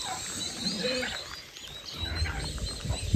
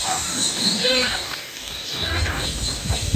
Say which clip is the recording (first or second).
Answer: first